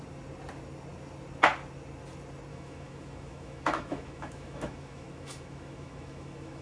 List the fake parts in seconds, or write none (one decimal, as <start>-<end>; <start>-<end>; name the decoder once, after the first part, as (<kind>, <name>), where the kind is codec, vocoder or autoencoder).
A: 2.5-6.6 (autoencoder, DAC-VAE)